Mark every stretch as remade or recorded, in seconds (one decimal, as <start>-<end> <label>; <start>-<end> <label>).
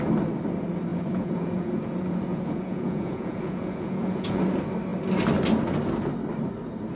0.0-0.9 recorded; 0.9-4.4 remade; 4.4-7.0 recorded